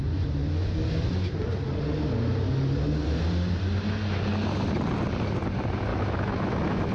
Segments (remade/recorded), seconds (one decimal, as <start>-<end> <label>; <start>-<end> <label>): 0.0-5.9 recorded; 5.9-6.9 remade